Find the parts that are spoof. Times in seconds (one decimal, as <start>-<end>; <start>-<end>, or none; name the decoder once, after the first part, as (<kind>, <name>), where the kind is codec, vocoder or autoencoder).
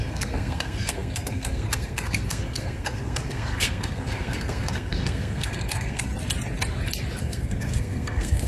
0.0-6.1 (codec, SNAC); 7.2-8.5